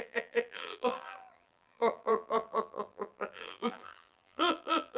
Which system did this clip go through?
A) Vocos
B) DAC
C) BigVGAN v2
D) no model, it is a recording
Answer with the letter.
C